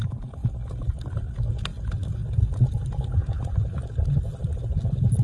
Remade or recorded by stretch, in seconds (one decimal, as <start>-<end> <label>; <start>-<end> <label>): 0.0-0.6 remade; 0.6-5.2 recorded